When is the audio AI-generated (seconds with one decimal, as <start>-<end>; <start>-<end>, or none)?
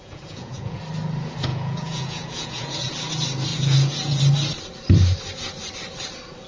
0.0-0.8; 1.5-2.9; 3.5-4.2